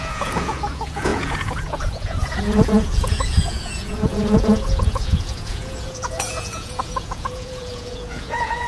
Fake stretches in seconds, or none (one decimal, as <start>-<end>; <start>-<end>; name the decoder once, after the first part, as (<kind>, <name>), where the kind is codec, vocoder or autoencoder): 0.0-8.7 (vocoder, Vocos)